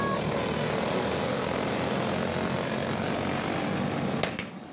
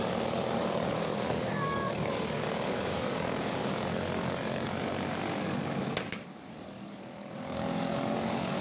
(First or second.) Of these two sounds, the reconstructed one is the second